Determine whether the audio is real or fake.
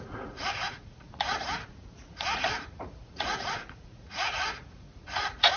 fake